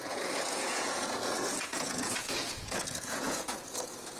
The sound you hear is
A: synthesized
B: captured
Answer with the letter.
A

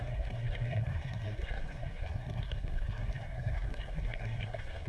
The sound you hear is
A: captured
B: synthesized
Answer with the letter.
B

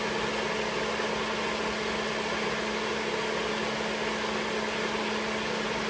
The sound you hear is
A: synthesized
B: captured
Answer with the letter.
B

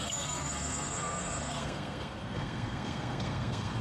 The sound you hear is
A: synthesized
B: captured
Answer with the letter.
A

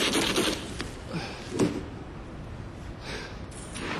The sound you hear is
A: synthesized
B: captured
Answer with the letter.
B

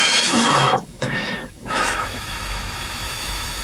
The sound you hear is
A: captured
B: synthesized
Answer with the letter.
B